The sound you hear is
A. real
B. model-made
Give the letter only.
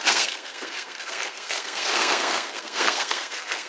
B